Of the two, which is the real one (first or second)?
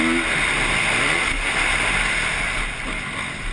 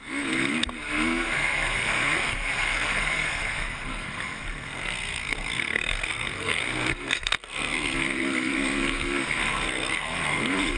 first